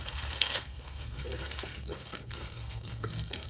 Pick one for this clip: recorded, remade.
remade